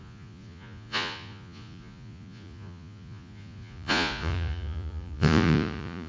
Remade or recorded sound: remade